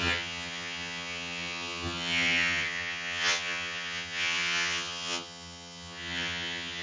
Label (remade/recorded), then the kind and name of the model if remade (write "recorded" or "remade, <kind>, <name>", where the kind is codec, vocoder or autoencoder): remade, vocoder, HiFi-GAN